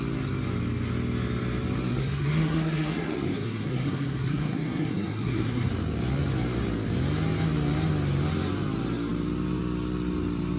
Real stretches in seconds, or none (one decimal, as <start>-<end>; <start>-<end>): 0.0-1.9; 5.7-10.6